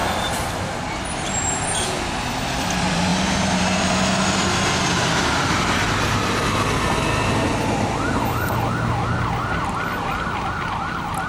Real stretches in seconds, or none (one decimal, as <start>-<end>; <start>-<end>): 1.8-3.1; 3.8-11.3